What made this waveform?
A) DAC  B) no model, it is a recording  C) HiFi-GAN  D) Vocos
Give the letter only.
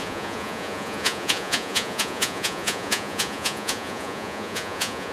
D